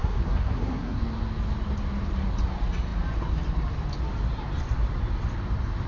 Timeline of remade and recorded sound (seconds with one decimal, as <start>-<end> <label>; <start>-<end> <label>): 0.0-1.0 remade; 1.0-5.9 recorded